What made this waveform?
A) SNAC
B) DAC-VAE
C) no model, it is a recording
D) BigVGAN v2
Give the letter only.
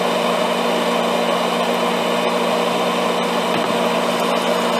C